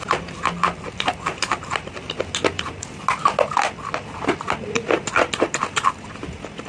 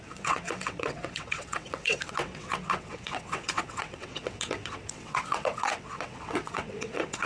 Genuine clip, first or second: first